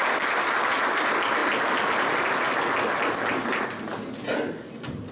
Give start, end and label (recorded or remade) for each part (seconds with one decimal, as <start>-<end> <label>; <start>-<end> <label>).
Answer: 0.0-5.1 recorded